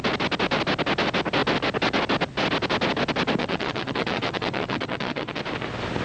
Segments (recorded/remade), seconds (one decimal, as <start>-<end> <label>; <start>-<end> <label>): 0.0-3.4 recorded; 3.4-5.4 remade; 5.4-6.0 recorded